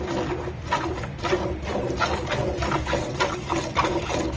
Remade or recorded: recorded